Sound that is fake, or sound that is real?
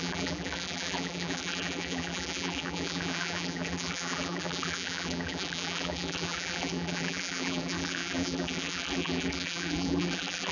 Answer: fake